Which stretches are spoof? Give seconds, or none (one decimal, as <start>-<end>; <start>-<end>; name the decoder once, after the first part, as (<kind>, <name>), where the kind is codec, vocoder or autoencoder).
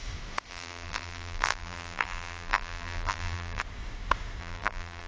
0.5-3.6 (vocoder, BigVGAN v2); 4.4-5.1